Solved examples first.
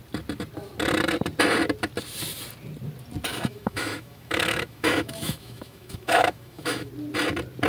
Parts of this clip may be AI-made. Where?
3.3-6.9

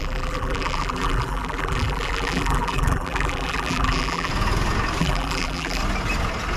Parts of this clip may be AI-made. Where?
0.0-4.3; 5.0-5.8

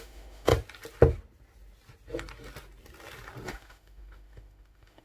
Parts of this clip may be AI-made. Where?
0.0-0.5; 3.5-5.0